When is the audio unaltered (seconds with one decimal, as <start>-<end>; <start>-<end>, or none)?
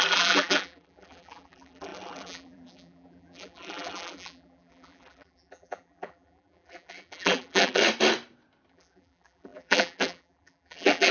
7.8-8.7